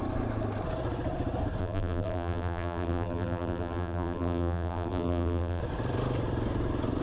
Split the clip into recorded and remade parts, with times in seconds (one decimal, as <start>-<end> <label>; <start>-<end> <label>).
0.0-1.6 recorded; 1.6-5.6 remade; 5.6-7.0 recorded